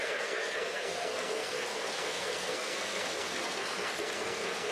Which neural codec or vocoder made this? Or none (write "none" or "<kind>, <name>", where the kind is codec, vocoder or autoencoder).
codec, SNAC